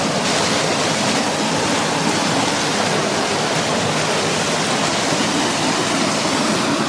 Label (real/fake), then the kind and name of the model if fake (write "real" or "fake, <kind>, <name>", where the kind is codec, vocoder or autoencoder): real